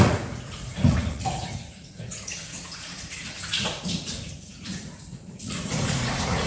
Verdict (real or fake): fake